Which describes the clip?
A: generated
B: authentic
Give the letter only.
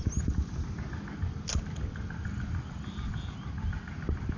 B